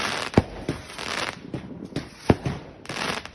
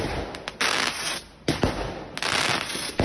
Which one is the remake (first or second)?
first